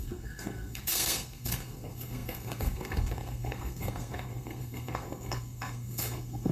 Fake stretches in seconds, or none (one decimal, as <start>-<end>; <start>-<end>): 0.0-6.5